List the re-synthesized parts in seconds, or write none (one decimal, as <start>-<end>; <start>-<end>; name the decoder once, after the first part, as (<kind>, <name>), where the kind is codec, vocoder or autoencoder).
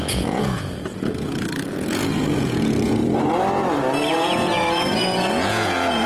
0.0-3.0 (vocoder, Vocos); 4.1-6.1